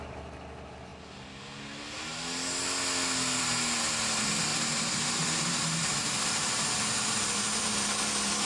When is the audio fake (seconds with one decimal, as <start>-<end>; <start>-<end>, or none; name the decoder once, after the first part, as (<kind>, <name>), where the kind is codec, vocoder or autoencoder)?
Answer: 4.5-8.0 (vocoder, BigVGAN v2)